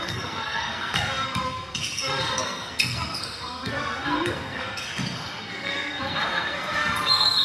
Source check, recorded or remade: remade